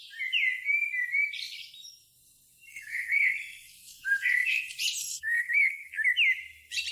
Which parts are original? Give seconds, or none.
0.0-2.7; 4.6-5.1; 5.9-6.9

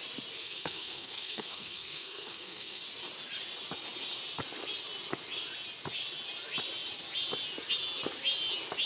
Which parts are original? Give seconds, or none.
0.0-0.4; 2.8-8.9